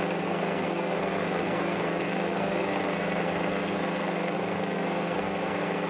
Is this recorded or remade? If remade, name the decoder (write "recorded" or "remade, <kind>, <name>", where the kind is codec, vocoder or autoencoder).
remade, codec, SNAC